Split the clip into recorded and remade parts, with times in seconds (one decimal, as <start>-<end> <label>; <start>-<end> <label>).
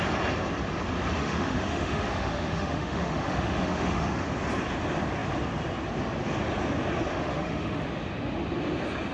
0.0-1.2 recorded; 1.2-4.3 remade; 4.3-7.1 recorded; 7.1-7.8 remade; 7.8-9.1 recorded